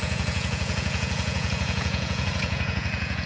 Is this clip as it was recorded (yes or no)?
no